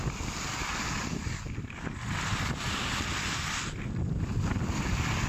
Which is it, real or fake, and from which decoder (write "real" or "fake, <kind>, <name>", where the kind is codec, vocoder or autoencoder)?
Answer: real